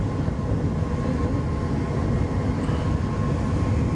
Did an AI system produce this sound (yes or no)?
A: no